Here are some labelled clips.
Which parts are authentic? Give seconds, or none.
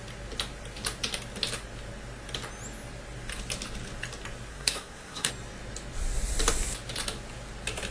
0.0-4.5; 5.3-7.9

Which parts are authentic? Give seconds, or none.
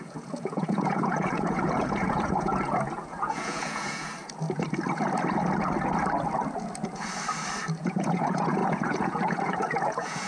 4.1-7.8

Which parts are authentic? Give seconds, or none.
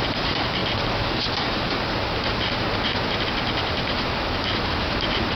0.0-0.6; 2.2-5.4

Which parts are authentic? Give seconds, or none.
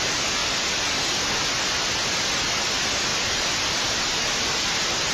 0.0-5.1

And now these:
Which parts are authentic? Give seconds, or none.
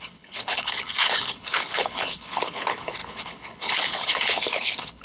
none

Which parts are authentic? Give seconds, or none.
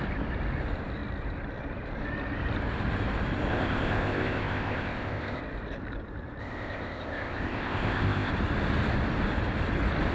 0.0-3.5; 5.4-6.4; 8.3-10.1